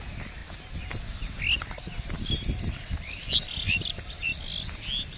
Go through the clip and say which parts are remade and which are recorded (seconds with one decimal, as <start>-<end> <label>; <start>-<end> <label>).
0.0-5.2 recorded